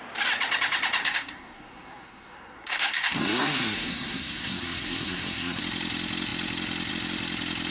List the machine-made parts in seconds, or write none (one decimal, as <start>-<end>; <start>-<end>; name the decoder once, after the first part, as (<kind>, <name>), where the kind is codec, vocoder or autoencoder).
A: 1.0-5.6 (codec, SNAC)